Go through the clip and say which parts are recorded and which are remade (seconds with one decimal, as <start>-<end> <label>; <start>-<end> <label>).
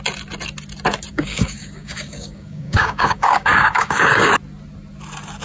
0.0-1.1 recorded; 1.1-4.3 remade; 4.3-5.4 recorded